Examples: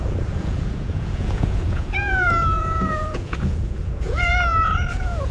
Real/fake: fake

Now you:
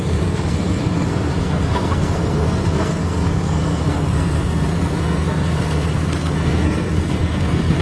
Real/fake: fake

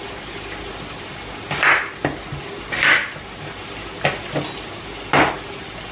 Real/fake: real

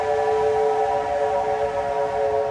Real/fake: real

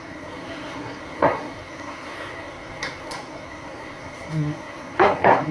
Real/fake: fake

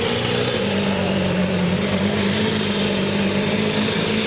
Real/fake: real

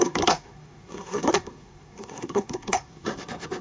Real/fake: fake